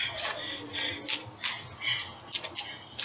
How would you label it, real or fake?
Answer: real